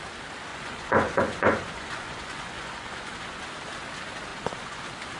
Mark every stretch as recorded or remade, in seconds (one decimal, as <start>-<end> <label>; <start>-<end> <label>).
0.0-0.5 recorded; 0.5-3.4 remade; 3.4-4.3 recorded; 4.3-4.8 remade; 4.8-5.2 recorded